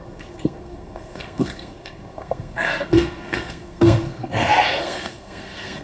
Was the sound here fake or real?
fake